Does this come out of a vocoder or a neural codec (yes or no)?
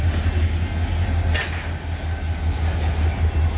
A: no